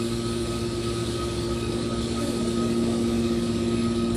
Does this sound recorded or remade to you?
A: remade